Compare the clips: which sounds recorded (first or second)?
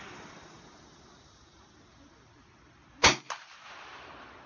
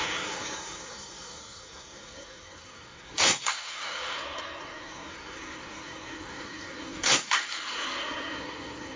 first